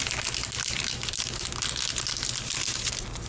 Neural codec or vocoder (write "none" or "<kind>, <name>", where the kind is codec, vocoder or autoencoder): none